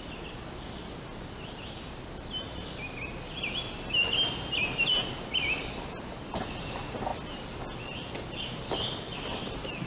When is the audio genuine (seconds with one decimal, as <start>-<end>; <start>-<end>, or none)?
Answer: 0.0-9.9